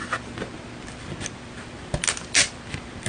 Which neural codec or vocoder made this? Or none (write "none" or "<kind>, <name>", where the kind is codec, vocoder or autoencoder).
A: none